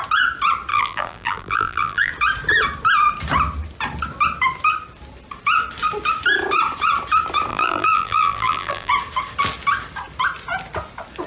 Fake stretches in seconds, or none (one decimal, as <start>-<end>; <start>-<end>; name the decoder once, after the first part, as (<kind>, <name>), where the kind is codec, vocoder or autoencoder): 0.7-2.1 (vocoder, BigVGAN v2); 7.5-8.9